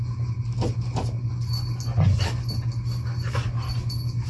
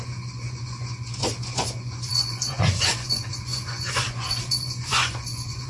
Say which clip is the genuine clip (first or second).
first